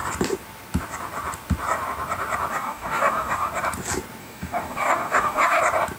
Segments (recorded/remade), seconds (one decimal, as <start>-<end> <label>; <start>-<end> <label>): 0.0-2.5 recorded; 2.5-3.5 remade; 3.5-4.2 recorded; 4.2-5.6 remade; 5.6-6.0 recorded